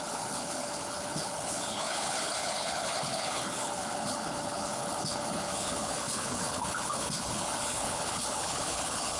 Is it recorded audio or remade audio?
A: remade